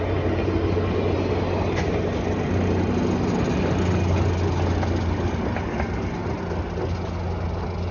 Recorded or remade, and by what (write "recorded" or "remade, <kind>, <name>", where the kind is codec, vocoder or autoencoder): recorded